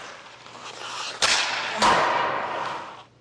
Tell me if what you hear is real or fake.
real